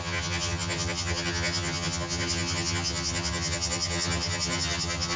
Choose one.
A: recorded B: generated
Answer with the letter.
B